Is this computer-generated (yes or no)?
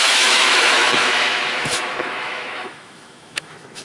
yes